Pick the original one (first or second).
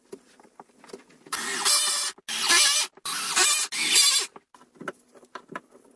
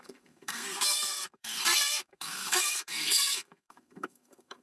first